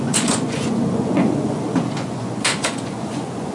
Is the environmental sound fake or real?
fake